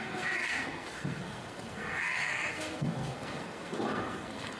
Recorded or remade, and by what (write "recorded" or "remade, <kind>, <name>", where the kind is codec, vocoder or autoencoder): remade, codec, SNAC